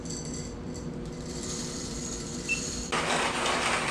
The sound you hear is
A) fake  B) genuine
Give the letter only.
A